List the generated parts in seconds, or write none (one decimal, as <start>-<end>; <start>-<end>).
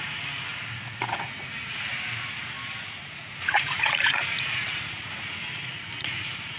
0.0-1.9; 3.0-6.6